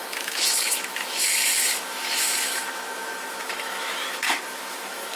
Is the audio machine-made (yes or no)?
yes